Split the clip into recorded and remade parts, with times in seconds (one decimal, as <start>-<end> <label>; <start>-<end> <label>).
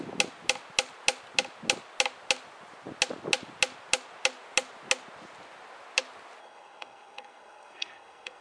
0.0-6.4 recorded; 6.4-8.4 remade